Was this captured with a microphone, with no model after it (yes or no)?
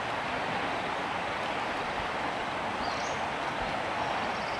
yes